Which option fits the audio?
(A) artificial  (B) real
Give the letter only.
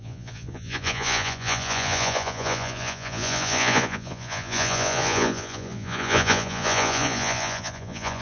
A